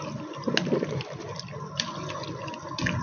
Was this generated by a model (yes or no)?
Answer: no